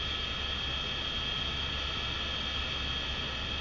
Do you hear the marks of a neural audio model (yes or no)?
no